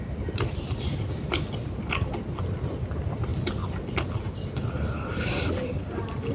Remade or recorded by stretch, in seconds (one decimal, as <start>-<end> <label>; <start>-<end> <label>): 0.0-6.3 recorded